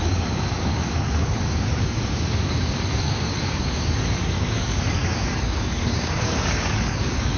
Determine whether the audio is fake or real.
fake